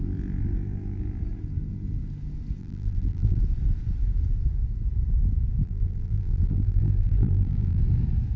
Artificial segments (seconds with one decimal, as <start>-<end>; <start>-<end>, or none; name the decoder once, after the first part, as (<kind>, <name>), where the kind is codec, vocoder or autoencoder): 2.6-3.4 (vocoder, BigVGAN v2); 5.6-7.8